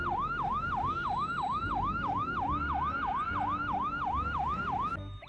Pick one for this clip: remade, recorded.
recorded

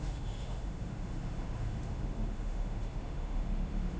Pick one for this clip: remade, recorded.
remade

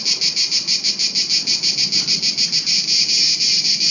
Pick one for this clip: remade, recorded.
recorded